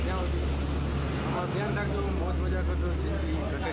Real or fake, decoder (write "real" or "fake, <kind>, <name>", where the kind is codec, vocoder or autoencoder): real